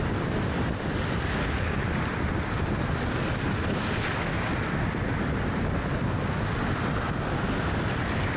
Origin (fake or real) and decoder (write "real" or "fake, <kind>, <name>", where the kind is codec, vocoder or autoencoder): real